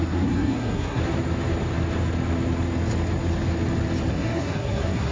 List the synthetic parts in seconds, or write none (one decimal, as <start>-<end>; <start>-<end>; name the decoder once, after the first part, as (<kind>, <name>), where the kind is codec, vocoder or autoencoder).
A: 0.0-1.0 (codec, SNAC); 4.1-5.1